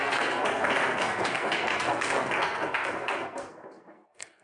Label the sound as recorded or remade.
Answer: remade